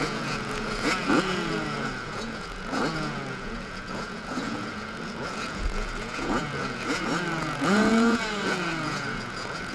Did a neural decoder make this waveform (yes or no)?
yes